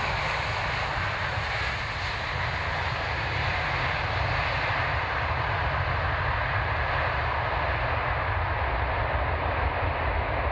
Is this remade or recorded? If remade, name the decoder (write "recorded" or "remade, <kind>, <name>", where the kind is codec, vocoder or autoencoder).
recorded